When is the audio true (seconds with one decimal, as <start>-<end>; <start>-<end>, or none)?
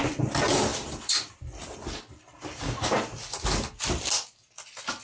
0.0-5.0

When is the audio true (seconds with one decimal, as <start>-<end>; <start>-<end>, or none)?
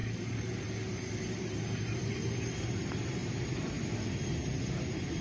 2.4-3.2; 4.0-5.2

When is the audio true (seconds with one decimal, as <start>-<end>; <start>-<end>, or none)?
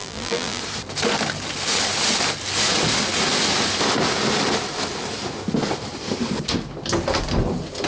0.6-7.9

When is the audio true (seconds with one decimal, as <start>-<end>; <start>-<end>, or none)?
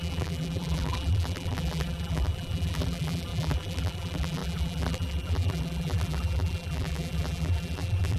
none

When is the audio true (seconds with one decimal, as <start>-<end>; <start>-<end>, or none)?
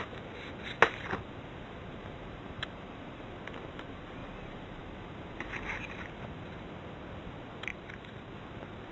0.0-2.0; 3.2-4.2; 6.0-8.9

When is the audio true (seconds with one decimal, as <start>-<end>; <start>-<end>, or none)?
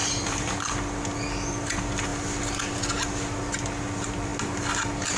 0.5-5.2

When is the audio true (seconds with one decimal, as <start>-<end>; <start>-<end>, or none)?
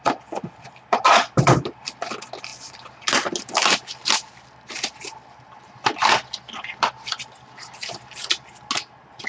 2.0-9.3